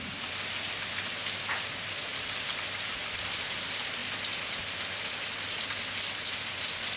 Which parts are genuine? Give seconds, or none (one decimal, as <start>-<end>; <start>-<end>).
0.0-7.0